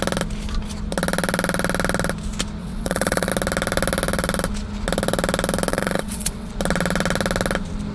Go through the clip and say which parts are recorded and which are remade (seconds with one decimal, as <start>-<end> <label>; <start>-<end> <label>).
0.0-2.6 recorded; 2.6-3.3 remade; 3.3-5.7 recorded; 5.7-6.5 remade; 6.5-7.9 recorded